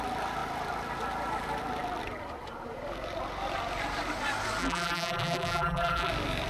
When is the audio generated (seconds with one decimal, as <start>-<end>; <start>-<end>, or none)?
4.6-6.1